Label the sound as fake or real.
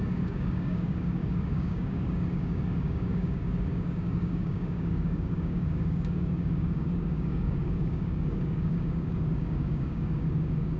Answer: fake